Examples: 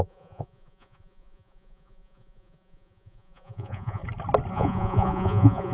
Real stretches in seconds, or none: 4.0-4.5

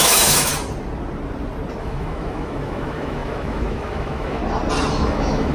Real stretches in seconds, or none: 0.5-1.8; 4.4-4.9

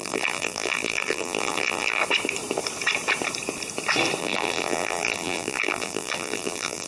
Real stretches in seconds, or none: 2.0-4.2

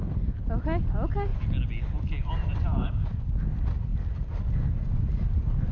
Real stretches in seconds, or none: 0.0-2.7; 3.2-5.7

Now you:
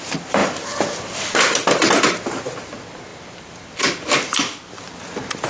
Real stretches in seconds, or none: 0.0-0.4; 1.9-3.1; 5.0-5.5

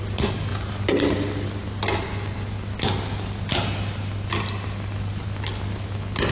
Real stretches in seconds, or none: 0.0-6.3